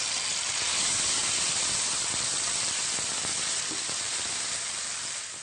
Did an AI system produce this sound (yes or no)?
no